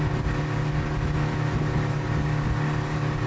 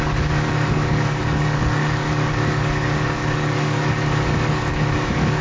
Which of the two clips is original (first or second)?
first